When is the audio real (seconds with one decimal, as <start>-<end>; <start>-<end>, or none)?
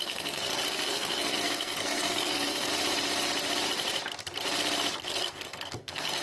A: 2.7-5.0